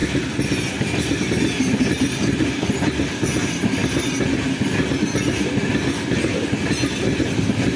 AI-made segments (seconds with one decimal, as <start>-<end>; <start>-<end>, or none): none